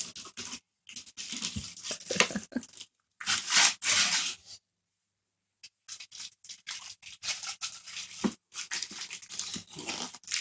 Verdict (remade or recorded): recorded